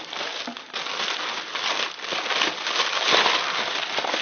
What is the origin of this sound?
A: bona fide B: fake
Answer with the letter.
A